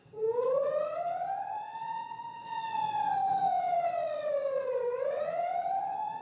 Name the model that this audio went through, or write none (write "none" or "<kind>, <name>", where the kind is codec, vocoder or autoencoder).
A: vocoder, WaveNeXt